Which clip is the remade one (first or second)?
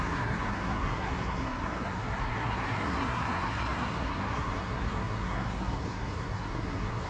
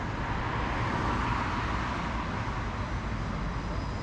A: first